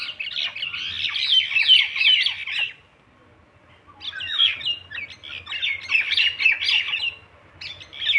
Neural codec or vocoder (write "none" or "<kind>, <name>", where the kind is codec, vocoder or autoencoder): none